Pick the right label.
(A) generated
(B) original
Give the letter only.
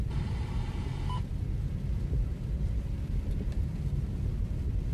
A